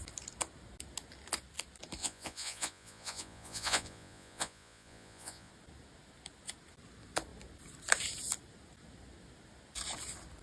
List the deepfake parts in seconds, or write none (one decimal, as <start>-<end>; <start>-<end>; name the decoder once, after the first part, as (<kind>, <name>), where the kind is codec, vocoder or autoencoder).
2.0-5.5 (vocoder, Vocos)